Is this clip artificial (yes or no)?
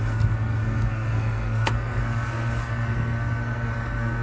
yes